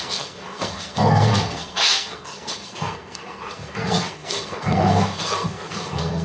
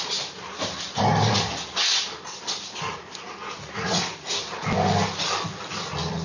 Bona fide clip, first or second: second